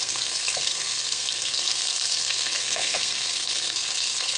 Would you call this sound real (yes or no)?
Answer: no